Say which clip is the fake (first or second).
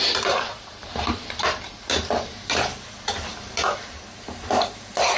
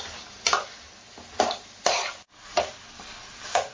first